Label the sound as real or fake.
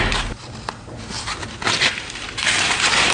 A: real